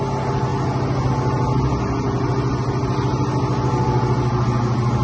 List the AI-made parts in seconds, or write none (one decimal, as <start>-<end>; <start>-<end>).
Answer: none